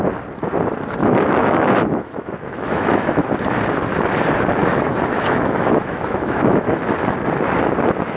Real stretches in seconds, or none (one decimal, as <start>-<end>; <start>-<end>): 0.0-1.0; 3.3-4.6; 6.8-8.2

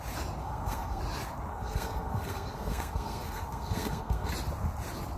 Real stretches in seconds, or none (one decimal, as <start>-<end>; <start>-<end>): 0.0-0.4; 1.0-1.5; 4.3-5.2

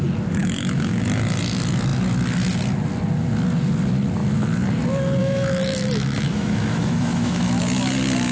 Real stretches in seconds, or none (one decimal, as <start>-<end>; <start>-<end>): 0.0-0.4; 1.0-5.2; 7.6-8.3

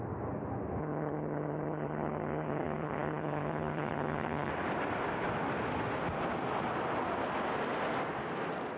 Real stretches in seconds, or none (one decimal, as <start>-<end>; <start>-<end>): 0.0-0.8; 4.5-8.8

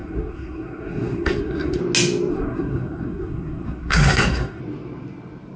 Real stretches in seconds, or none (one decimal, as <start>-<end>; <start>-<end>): 1.8-2.3; 4.6-5.6

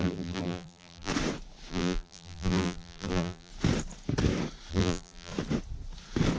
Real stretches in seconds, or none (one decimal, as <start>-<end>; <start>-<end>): 1.1-1.7; 3.5-4.7; 5.3-6.4